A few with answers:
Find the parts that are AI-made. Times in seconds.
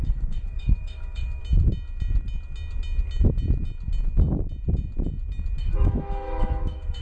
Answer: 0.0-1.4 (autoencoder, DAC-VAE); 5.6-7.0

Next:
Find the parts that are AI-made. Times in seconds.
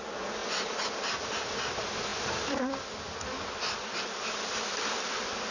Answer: none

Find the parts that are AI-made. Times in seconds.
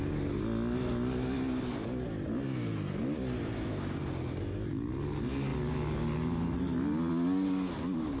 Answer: none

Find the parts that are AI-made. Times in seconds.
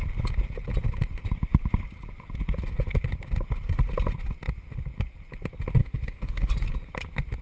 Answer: 5.8-6.5 (autoencoder, DAC-VAE)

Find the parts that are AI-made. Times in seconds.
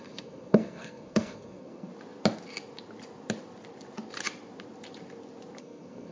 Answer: 0.0-1.9 (codec, SNAC); 5.6-6.1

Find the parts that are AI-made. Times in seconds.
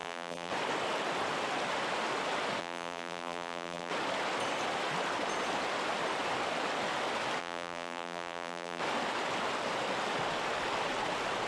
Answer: 0.0-0.5 (vocoder, BigVGAN v2); 2.6-3.9; 7.4-8.8